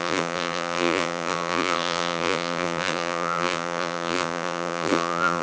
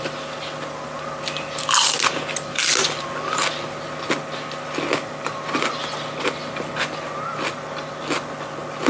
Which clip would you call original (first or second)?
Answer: second